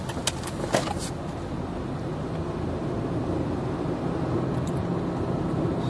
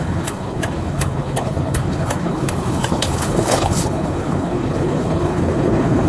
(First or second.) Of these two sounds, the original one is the first